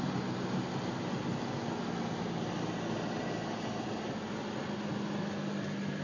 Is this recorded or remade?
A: recorded